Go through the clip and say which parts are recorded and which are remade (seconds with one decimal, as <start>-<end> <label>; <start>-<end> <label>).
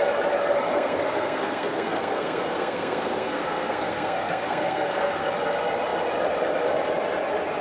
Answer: 0.0-0.7 recorded; 0.7-5.3 remade; 5.3-7.6 recorded